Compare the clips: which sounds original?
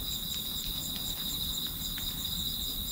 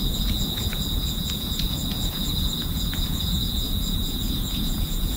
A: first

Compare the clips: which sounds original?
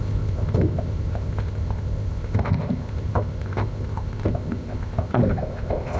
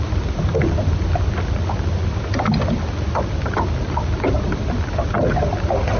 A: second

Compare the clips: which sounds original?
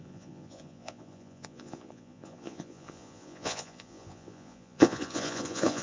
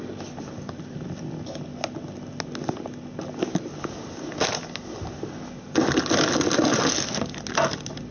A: second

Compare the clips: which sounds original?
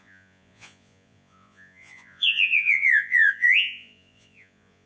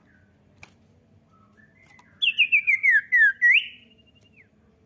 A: second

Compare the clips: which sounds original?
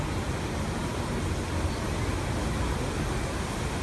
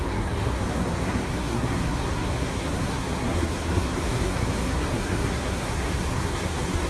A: first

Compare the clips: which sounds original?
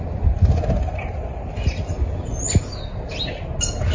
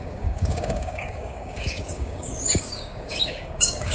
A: first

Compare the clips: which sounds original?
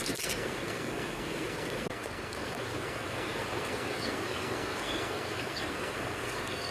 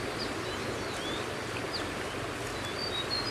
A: second